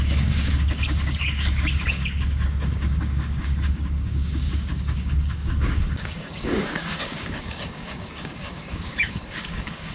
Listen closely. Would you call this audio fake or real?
fake